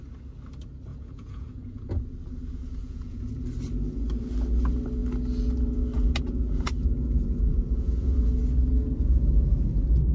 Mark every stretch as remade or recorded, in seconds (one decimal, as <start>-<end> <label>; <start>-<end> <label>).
0.0-0.9 recorded; 0.9-2.0 remade; 2.0-2.8 recorded; 2.8-3.3 remade; 3.3-7.5 recorded; 7.5-8.4 remade; 8.4-10.1 recorded